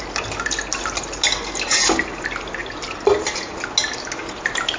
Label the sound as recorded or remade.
recorded